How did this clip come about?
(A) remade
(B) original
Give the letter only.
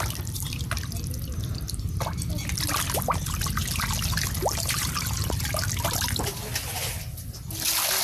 B